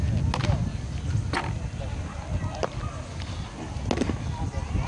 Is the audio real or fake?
real